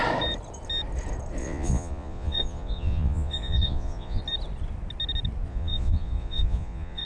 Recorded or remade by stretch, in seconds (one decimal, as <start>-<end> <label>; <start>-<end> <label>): 0.0-1.4 recorded; 1.4-4.2 remade; 4.2-5.5 recorded; 5.5-7.1 remade